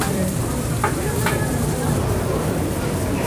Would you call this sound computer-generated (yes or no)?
yes